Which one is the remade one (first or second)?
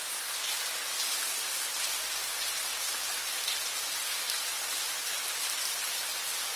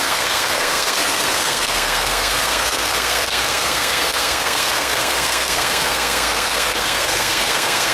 second